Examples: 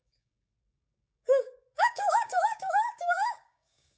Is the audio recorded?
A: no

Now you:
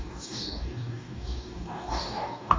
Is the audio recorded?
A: no